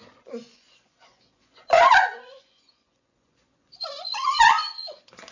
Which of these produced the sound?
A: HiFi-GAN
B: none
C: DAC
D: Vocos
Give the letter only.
D